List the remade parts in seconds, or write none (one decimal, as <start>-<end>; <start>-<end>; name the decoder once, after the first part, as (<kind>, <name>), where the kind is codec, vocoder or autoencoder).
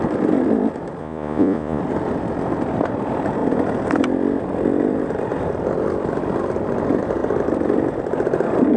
1.0-1.8 (vocoder, Vocos)